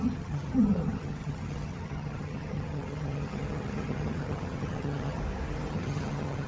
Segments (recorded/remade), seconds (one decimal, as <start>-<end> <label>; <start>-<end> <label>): 0.0-5.2 remade; 5.2-5.7 recorded; 5.7-6.5 remade